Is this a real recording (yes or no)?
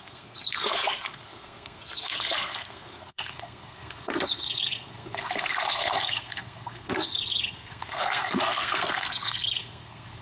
no